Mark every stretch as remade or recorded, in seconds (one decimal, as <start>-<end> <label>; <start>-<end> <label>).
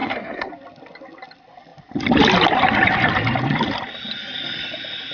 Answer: 0.0-0.5 remade; 0.5-5.1 recorded